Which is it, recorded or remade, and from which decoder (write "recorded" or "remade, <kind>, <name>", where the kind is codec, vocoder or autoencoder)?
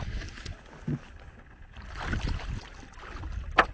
recorded